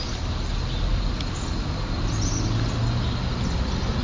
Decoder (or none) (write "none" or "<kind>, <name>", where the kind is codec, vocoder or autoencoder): none